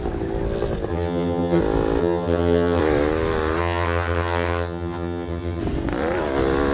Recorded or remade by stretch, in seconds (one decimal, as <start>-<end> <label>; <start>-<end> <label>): 0.0-0.9 recorded; 0.9-1.6 remade; 1.6-2.0 recorded; 2.0-2.8 remade; 2.8-3.6 recorded; 3.6-5.6 remade; 5.6-6.7 recorded